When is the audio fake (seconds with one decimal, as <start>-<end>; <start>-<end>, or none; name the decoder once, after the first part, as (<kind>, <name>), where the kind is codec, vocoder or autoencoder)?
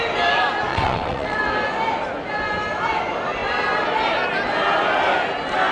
0.7-1.4 (vocoder, WaveNeXt)